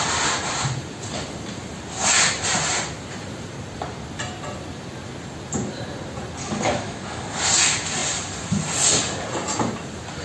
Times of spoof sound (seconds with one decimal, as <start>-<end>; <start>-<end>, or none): 6.4-7.4